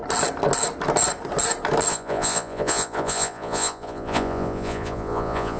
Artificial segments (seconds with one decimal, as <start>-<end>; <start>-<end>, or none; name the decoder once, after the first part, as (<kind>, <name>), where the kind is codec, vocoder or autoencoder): 1.9-5.6 (vocoder, Vocos)